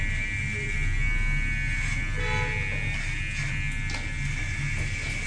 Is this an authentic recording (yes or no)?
yes